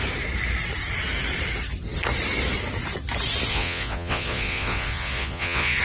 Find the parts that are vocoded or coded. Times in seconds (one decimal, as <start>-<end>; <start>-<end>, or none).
3.5-5.8